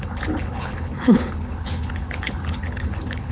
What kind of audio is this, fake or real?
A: fake